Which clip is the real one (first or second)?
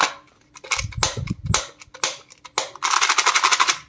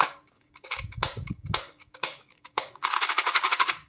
first